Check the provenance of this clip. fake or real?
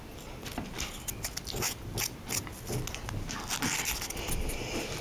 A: real